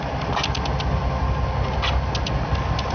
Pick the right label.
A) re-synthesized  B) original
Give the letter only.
B